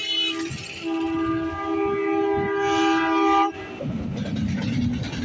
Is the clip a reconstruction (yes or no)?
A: no